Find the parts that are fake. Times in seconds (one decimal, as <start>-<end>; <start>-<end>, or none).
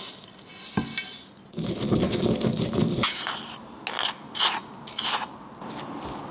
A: none